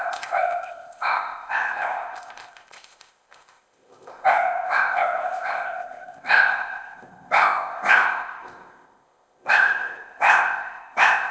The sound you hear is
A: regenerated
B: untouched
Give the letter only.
A